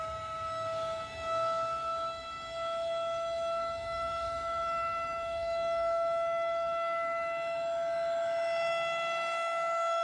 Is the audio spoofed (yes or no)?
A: yes